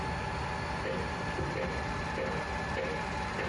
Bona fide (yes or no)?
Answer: yes